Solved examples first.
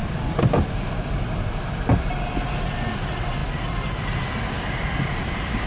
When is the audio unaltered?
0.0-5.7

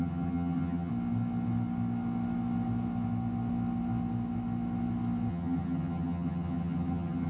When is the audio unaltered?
0.9-5.3

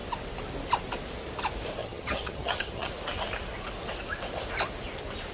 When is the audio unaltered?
0.0-1.8; 2.9-5.3